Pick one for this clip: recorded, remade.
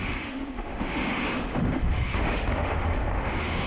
remade